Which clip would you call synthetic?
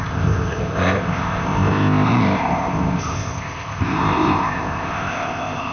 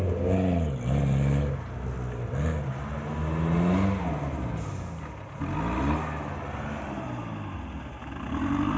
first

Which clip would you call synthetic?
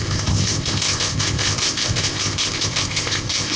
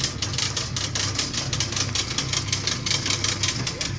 first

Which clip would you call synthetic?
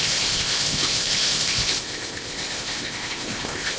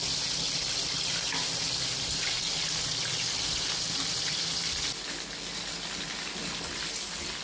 first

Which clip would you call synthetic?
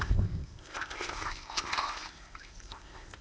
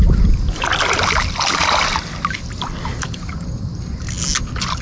first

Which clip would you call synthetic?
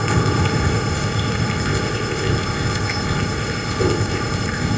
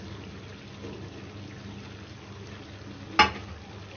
first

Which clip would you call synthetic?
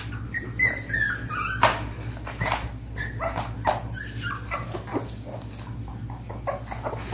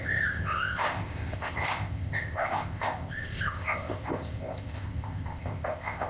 second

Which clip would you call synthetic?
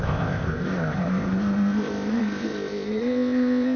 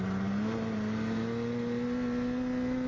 first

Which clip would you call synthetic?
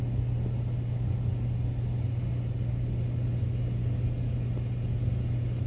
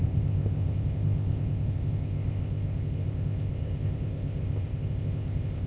second